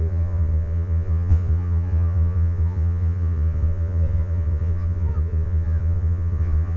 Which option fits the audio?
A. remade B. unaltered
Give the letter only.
A